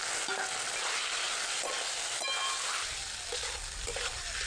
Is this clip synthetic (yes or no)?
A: no